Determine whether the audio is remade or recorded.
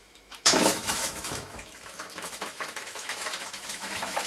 remade